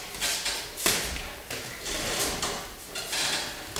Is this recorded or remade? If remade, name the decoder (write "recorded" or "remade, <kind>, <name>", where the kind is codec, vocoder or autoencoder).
recorded